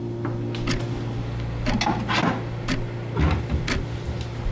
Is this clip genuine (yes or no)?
yes